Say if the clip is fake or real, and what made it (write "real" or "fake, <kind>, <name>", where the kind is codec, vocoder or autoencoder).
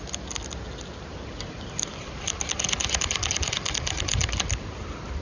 real